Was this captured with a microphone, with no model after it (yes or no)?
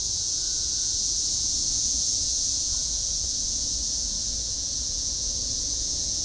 no